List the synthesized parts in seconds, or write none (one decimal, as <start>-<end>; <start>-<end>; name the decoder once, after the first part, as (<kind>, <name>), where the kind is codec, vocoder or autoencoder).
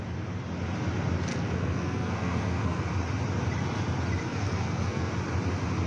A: 1.3-2.8 (codec, SNAC); 4.2-5.1